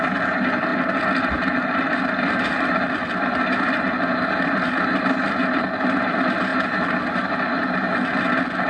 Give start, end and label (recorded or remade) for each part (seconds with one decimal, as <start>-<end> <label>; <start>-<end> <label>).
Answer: 0.0-8.7 recorded